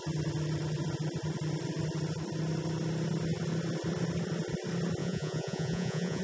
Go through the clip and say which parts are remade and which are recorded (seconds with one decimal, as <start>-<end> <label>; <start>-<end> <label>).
0.0-5.0 recorded; 5.0-6.2 remade